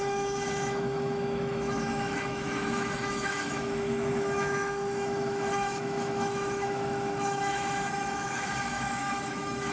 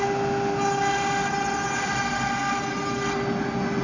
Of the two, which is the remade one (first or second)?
first